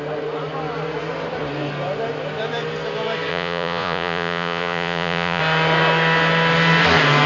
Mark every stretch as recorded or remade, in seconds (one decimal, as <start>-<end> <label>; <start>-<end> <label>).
0.0-3.3 recorded; 3.3-5.4 remade; 5.4-7.3 recorded